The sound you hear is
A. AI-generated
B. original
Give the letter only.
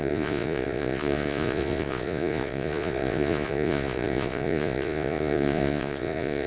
A